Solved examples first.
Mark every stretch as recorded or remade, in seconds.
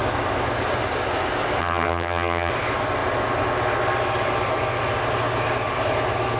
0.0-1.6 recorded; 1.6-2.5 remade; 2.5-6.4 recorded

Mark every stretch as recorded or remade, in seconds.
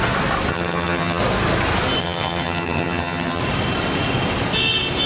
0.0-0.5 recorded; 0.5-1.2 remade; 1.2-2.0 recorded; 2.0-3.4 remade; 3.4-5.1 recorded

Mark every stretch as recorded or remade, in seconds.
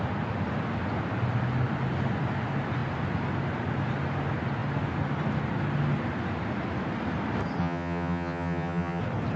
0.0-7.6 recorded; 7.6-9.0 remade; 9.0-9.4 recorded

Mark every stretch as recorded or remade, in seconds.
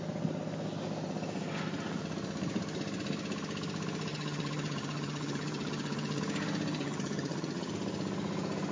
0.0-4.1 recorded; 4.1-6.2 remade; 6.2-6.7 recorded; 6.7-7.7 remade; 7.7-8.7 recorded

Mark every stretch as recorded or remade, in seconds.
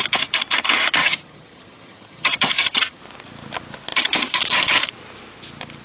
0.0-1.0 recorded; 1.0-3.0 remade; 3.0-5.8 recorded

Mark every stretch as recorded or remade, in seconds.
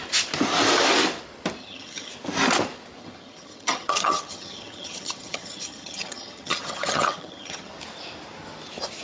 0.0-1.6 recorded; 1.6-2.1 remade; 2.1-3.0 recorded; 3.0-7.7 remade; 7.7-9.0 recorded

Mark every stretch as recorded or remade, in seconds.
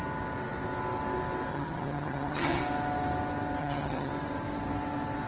0.0-1.5 recorded; 1.5-2.6 remade; 2.6-3.6 recorded; 3.6-4.1 remade; 4.1-5.3 recorded